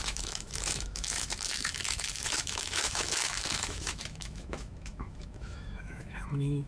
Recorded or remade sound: remade